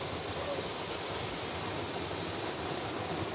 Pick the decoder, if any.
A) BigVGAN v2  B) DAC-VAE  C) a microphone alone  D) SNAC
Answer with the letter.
C